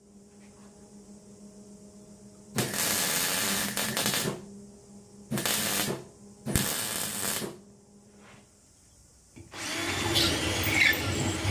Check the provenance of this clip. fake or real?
real